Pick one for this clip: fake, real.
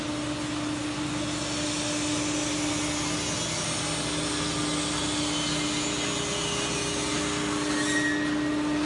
real